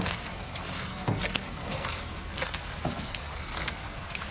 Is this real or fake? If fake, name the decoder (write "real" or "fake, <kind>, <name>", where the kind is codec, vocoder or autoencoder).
fake, codec, SNAC